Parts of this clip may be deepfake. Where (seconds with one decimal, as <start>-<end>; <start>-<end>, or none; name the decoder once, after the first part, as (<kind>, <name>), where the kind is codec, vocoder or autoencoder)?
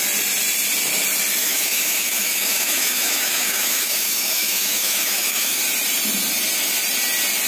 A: 1.4-5.6 (autoencoder, DAC-VAE)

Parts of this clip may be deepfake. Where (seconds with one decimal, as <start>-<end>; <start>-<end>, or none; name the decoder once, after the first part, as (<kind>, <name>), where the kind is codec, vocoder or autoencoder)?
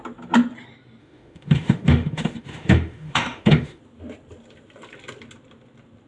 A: 1.0-3.8 (autoencoder, DAC-VAE)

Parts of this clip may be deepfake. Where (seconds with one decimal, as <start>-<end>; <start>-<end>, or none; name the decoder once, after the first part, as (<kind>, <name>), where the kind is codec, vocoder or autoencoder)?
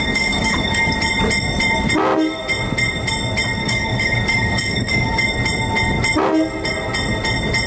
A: 0.0-0.9 (codec, DAC); 3.6-5.2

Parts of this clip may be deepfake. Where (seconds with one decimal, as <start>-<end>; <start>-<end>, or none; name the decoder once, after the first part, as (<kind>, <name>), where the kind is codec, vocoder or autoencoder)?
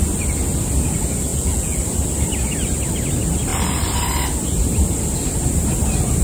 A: 1.3-1.8 (vocoder, Vocos)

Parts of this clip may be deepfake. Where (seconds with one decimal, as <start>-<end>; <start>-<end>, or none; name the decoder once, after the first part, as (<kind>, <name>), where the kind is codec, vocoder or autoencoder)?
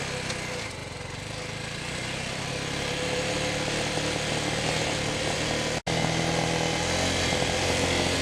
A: 0.8-2.5 (vocoder, BigVGAN v2)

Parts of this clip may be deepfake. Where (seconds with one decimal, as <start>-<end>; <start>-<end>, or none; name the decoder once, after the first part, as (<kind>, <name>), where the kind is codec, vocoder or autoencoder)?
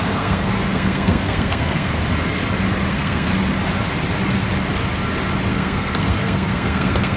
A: 0.0-2.0 (codec, SNAC); 2.9-3.3; 5.5-7.2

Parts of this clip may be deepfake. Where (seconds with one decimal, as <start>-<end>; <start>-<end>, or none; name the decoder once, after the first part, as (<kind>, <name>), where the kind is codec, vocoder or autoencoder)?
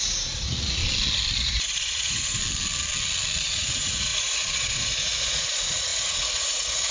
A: 0.0-0.8 (vocoder, Vocos); 1.4-2.4; 3.4-6.9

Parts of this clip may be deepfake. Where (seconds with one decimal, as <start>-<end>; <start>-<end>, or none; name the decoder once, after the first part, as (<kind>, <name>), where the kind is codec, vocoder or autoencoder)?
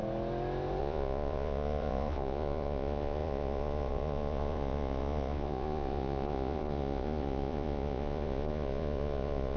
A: 0.8-9.6 (vocoder, Vocos)